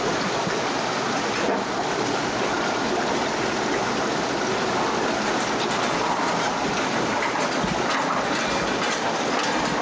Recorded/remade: recorded